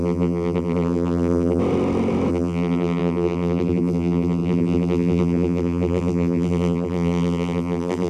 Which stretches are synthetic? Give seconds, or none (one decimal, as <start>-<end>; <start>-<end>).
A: 0.0-1.6; 2.3-8.1

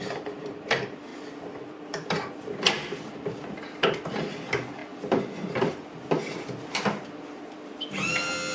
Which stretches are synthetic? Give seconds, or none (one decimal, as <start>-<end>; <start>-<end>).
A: 0.0-8.5

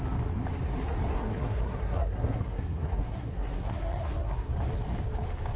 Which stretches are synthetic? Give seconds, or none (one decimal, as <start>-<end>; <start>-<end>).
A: 1.1-4.5

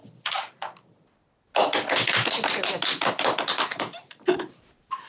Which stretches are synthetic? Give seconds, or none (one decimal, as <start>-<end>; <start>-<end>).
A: none

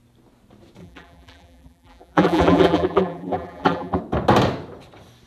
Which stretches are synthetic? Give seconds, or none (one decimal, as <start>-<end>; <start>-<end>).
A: 0.8-4.0

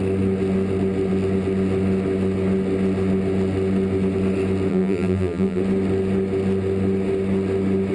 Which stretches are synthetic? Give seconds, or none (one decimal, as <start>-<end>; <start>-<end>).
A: 4.7-5.6

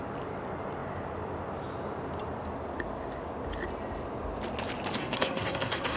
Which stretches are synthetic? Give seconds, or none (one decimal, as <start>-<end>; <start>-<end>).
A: 5.0-6.0